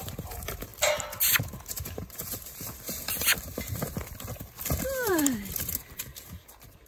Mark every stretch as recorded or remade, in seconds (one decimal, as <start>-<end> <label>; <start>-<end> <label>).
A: 0.0-0.7 remade; 0.7-1.4 recorded; 1.4-3.3 remade; 3.3-4.8 recorded; 4.8-6.9 remade